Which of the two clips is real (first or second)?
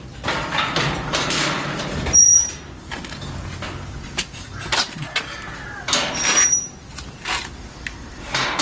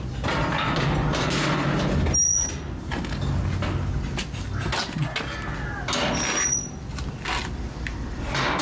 second